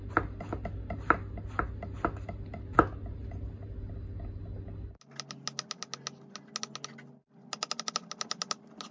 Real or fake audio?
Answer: real